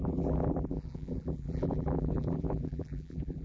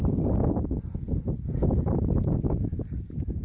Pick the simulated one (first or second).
first